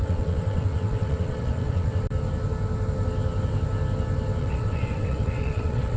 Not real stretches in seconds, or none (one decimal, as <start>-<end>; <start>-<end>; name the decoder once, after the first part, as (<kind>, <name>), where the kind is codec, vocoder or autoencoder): 0.0-1.9 (vocoder, WaveNeXt); 4.4-6.0